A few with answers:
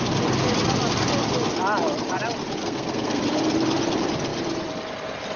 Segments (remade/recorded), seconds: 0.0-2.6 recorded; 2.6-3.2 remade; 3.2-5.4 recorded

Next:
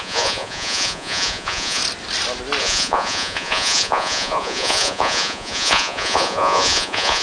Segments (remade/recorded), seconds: 0.0-1.8 remade; 1.8-2.6 recorded; 2.6-7.2 remade

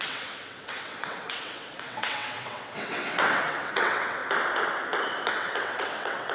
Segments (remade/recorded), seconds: 0.0-4.2 remade; 4.2-5.3 recorded; 5.3-6.3 remade